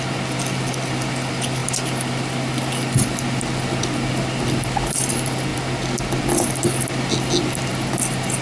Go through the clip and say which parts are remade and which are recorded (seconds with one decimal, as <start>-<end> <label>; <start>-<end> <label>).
0.0-8.4 recorded